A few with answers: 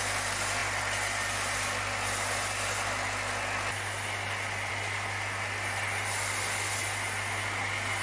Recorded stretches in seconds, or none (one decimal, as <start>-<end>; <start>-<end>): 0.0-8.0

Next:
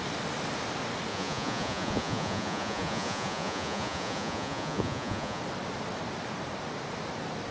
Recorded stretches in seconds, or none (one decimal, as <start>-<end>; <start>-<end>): 0.0-1.1; 5.4-7.5

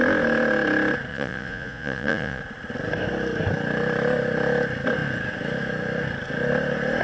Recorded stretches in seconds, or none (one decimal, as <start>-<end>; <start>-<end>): 0.0-1.1; 2.4-7.0